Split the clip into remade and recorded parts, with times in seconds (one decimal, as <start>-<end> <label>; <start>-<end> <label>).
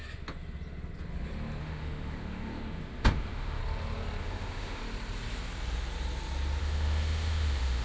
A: 0.0-1.6 recorded; 1.6-3.6 remade; 3.6-4.2 recorded; 4.2-4.8 remade; 4.8-6.6 recorded; 6.6-7.8 remade